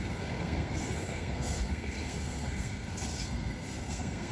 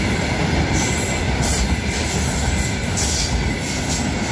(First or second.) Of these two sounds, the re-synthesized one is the first